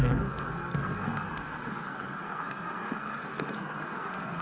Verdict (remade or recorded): remade